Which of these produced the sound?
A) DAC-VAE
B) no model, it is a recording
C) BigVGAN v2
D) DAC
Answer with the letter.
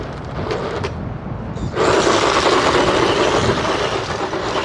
B